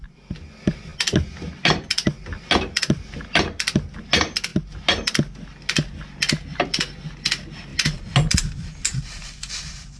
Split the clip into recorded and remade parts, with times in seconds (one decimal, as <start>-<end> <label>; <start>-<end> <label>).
0.0-10.0 recorded